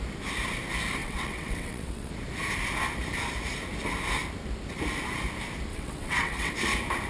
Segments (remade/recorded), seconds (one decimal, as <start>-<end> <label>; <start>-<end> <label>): 0.0-1.0 recorded; 1.0-2.1 remade; 2.1-5.7 recorded; 5.7-6.5 remade; 6.5-7.1 recorded